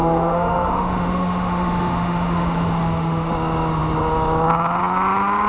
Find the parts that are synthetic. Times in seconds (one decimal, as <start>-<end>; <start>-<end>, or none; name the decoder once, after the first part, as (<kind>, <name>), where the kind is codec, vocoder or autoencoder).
0.0-3.3 (autoencoder, DAC-VAE)